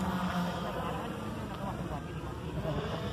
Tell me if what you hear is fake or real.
fake